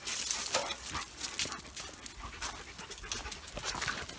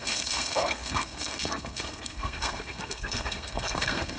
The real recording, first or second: first